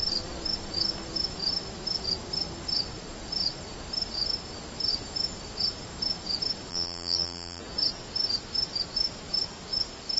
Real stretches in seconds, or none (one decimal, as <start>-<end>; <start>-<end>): 0.0-6.7; 7.6-10.2